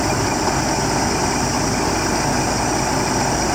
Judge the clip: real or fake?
real